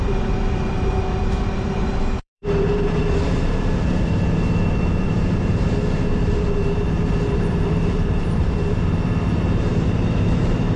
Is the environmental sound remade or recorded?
remade